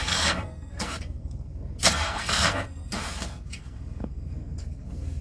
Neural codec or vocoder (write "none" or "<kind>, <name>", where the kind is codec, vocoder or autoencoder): codec, SNAC